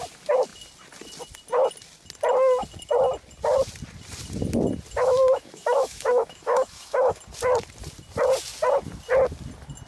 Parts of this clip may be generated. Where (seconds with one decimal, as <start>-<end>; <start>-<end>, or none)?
5.0-7.2